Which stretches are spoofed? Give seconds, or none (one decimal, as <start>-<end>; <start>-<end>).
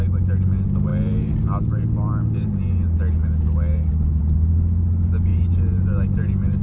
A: none